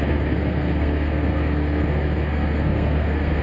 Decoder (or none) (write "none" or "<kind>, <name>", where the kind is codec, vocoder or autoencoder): codec, SNAC